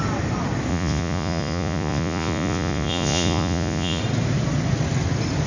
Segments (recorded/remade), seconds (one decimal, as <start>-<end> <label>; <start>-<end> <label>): 0.0-0.7 recorded; 0.7-4.0 remade; 4.0-5.5 recorded